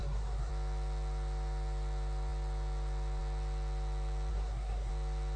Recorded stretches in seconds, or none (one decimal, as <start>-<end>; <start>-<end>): 0.5-4.3; 4.9-5.4